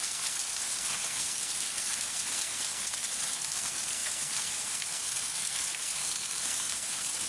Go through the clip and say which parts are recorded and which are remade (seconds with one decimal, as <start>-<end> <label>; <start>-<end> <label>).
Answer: 0.0-7.3 remade